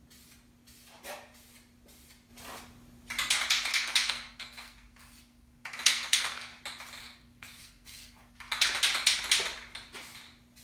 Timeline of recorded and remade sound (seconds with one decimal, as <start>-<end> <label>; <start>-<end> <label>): 0.0-3.7 recorded; 3.7-6.6 remade; 6.6-7.0 recorded; 7.0-8.8 remade; 8.8-10.6 recorded